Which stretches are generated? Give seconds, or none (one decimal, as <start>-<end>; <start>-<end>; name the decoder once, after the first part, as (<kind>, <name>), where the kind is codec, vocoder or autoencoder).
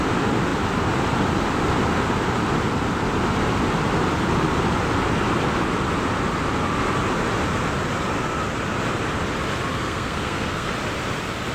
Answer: 9.7-10.7 (codec, SNAC)